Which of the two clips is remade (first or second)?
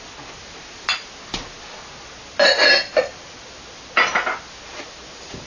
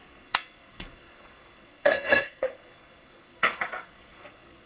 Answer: second